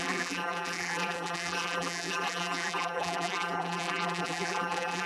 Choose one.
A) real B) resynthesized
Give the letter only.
B